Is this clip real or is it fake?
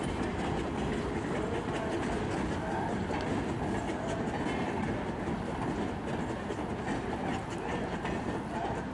real